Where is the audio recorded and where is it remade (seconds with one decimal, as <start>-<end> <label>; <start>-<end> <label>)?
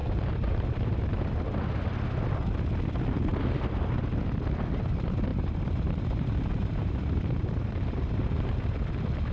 0.0-0.7 remade; 0.7-5.3 recorded; 5.3-8.8 remade; 8.8-9.3 recorded